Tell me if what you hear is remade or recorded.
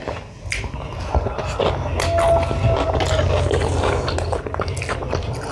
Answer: recorded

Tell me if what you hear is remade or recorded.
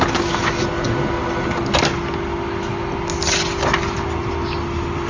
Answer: recorded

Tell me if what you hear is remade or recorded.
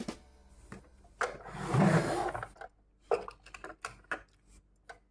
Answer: recorded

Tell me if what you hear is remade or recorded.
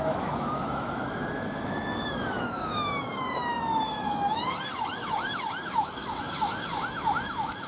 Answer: remade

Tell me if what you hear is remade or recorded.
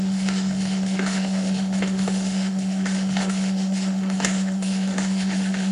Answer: remade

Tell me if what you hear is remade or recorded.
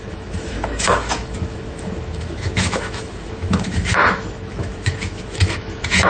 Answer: remade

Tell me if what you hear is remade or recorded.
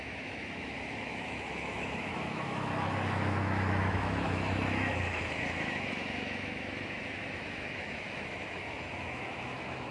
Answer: remade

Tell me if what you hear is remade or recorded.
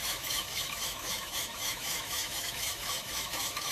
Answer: remade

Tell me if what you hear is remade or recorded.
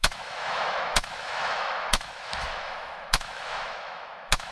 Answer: remade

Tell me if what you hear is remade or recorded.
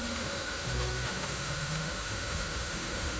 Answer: remade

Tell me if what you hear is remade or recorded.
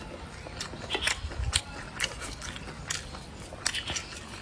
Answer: recorded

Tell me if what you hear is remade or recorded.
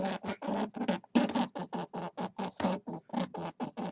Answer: recorded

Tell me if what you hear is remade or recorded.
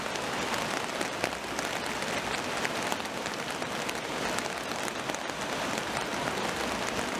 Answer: recorded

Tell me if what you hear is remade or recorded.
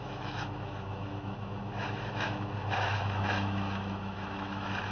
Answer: remade